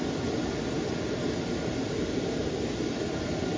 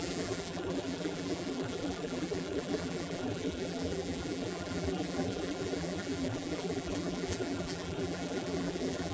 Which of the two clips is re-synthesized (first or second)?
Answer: second